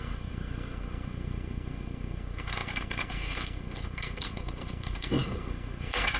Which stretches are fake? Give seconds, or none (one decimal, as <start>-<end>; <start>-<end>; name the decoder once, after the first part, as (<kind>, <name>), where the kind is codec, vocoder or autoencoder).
0.0-6.2 (codec, SNAC)